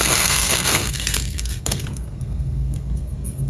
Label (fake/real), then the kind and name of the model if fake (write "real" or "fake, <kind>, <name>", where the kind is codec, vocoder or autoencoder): fake, codec, SNAC